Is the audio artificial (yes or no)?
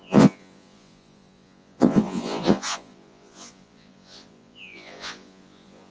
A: yes